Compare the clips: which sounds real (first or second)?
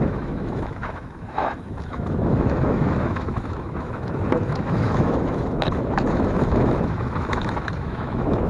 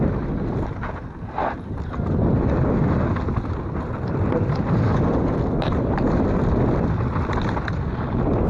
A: second